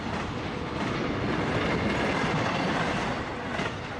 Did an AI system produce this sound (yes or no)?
no